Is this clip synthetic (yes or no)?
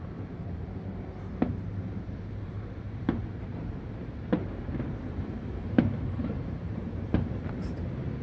yes